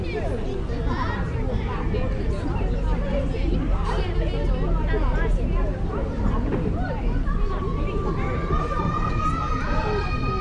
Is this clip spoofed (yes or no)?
no